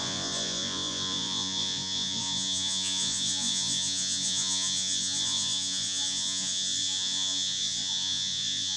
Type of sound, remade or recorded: remade